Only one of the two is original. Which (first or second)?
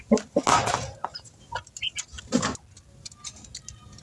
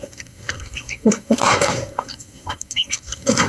first